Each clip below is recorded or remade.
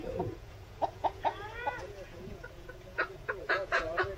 remade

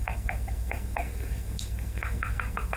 remade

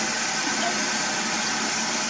recorded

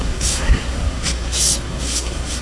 remade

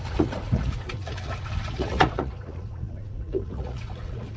remade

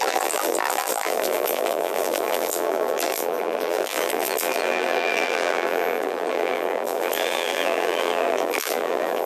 remade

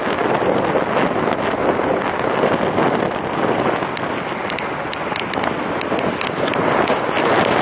recorded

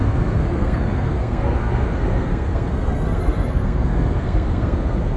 remade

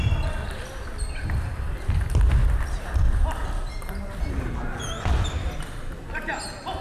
recorded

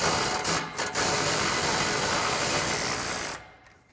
recorded